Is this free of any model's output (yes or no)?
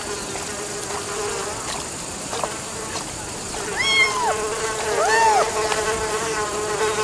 yes